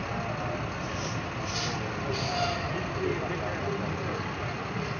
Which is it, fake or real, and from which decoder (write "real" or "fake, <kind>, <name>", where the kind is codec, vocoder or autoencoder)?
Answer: real